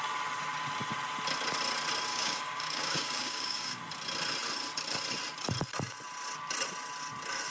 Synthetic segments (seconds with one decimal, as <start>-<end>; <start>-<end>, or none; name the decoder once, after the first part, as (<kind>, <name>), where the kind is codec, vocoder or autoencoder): 2.1-3.8 (codec, DAC)